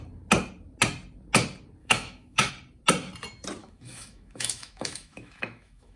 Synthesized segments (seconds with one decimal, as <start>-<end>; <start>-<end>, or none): 1.8-2.5; 3.6-6.0